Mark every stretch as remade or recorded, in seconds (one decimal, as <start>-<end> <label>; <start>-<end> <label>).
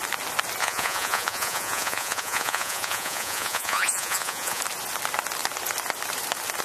0.0-0.6 recorded; 0.6-4.6 remade; 4.6-6.6 recorded